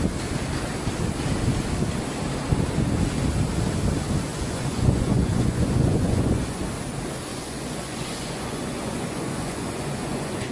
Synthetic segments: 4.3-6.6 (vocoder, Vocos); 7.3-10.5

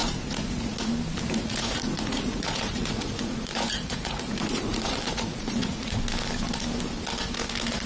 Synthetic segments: 0.0-0.9 (vocoder, Vocos); 1.4-6.0

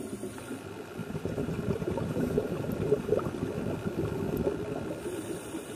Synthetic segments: 1.0-3.3 (vocoder, BigVGAN v2)

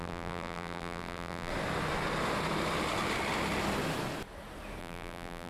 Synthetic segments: 0.0-1.5 (vocoder, BigVGAN v2); 4.8-5.5